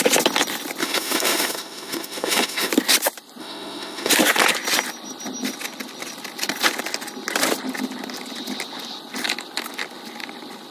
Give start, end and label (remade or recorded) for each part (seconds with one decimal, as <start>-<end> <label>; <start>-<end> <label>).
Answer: 0.0-0.8 recorded; 0.8-2.7 remade; 2.7-3.4 recorded; 3.4-4.1 remade; 4.1-10.7 recorded

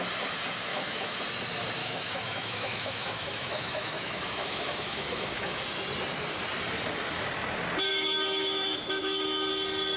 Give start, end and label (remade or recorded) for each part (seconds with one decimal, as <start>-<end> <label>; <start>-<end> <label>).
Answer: 0.0-0.7 recorded; 0.7-1.2 remade; 1.2-1.8 recorded; 1.8-5.6 remade; 5.6-7.9 recorded; 7.9-9.5 remade; 9.5-10.0 recorded

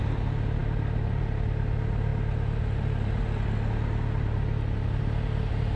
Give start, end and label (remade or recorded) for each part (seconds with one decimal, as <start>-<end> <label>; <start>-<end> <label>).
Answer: 0.0-5.8 recorded

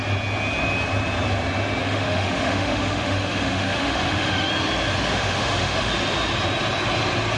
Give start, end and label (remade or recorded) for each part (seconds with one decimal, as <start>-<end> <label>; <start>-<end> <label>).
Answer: 0.0-1.8 recorded; 1.8-4.5 remade; 4.5-5.1 recorded; 5.1-5.9 remade; 5.9-7.4 recorded

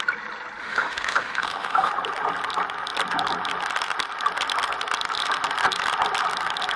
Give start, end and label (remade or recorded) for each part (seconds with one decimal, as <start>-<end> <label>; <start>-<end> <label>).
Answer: 0.0-0.6 recorded; 0.6-1.9 remade; 1.9-6.8 recorded

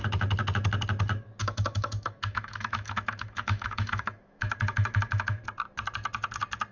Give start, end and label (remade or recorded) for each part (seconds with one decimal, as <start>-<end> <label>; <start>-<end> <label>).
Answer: 0.0-1.4 recorded; 1.4-5.4 remade; 5.4-6.7 recorded

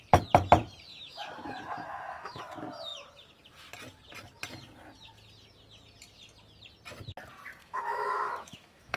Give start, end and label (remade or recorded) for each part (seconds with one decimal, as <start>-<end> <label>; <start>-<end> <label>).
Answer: 0.0-0.9 recorded; 0.9-2.4 remade; 2.4-7.6 recorded; 7.6-9.0 remade

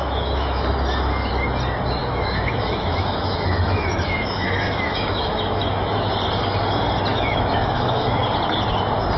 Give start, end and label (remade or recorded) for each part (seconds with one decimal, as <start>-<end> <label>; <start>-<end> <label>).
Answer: 0.0-0.6 remade; 0.6-2.0 recorded; 2.0-6.1 remade; 6.1-7.1 recorded; 7.1-8.2 remade; 8.2-9.2 recorded